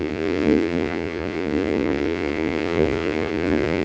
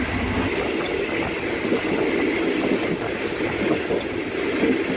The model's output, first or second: first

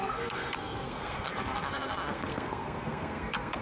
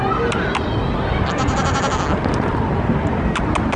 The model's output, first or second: first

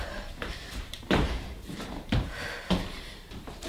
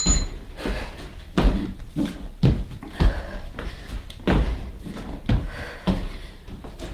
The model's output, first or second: first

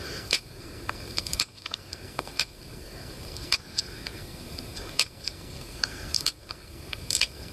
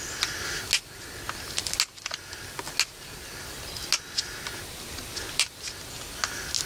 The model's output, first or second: first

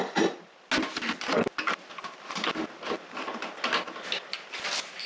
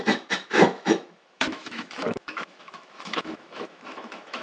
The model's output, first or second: second